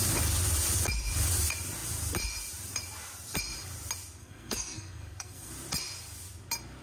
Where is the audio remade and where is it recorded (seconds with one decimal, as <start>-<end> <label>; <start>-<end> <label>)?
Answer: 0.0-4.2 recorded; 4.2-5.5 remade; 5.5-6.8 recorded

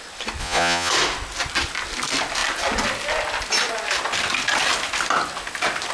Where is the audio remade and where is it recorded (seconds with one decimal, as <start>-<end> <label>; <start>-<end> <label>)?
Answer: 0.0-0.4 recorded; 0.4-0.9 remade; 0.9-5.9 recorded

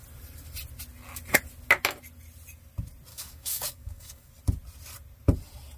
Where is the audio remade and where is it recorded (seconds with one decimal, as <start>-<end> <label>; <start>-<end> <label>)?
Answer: 0.0-3.1 recorded; 3.1-4.3 remade; 4.3-5.8 recorded

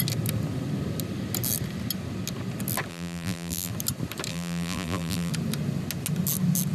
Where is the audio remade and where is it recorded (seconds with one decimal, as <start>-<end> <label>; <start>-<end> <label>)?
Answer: 0.0-2.9 recorded; 2.9-3.7 remade; 3.7-4.3 recorded; 4.3-5.3 remade; 5.3-6.7 recorded

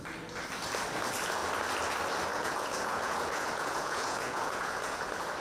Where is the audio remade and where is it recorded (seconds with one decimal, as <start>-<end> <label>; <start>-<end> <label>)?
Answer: 0.0-2.3 recorded; 2.3-5.0 remade; 5.0-5.4 recorded